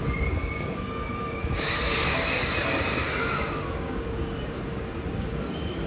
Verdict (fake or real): fake